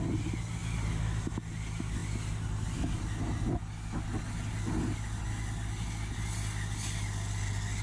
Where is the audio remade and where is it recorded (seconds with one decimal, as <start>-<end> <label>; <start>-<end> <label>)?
0.0-7.8 recorded